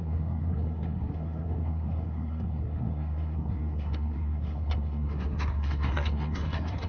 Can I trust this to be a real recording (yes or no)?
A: no